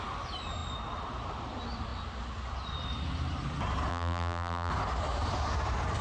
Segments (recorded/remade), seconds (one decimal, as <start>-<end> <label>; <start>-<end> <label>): 0.0-3.9 recorded; 3.9-4.7 remade; 4.7-6.0 recorded